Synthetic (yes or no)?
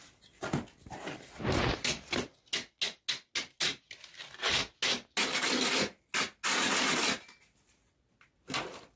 no